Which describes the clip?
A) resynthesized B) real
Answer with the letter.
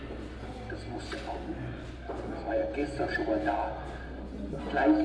B